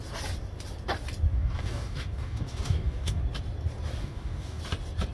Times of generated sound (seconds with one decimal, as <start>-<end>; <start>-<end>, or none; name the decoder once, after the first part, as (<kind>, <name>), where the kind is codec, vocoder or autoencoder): 1.3-3.2 (codec, DAC); 4.0-4.6